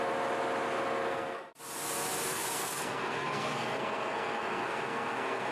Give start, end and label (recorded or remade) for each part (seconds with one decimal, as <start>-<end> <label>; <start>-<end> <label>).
0.0-1.1 recorded; 1.1-1.6 remade; 1.6-2.3 recorded; 2.3-5.5 remade